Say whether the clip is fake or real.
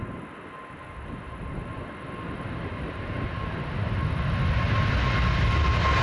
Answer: real